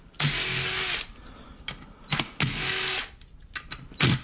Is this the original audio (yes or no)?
yes